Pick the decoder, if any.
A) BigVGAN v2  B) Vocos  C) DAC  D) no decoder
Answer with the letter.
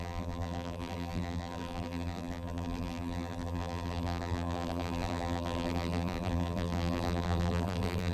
A